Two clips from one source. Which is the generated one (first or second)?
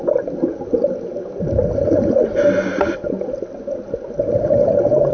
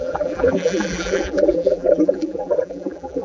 second